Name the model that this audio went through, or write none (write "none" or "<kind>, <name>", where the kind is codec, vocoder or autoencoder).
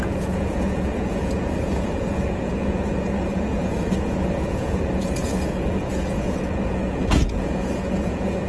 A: vocoder, Vocos